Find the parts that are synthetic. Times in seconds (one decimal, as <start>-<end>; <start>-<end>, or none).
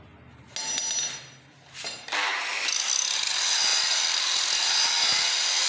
none